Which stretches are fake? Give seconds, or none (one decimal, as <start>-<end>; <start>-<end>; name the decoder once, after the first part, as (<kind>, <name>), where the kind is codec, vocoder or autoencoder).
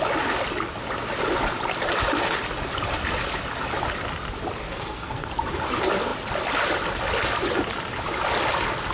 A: 4.6-5.3 (codec, SNAC)